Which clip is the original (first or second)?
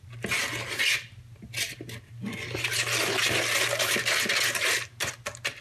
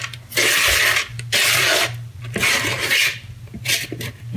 first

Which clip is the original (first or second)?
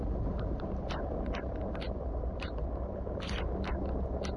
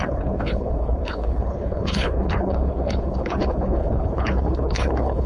first